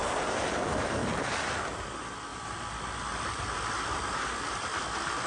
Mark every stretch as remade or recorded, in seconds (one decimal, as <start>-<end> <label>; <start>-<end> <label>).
0.0-5.3 recorded